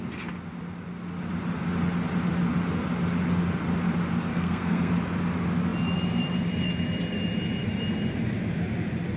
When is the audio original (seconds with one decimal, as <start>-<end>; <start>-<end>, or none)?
0.0-4.3; 4.9-9.2